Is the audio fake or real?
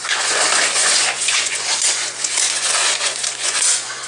fake